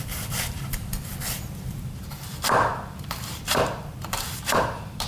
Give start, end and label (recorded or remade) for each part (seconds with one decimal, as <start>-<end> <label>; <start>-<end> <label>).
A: 0.0-1.1 remade; 1.1-1.7 recorded; 1.7-5.1 remade